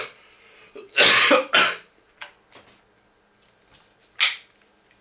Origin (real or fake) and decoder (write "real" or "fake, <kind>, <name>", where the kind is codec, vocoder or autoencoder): real